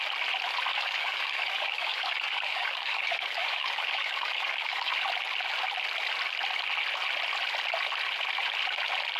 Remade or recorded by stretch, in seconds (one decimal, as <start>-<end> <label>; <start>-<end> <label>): 0.0-0.7 recorded; 0.7-4.9 remade; 4.9-9.2 recorded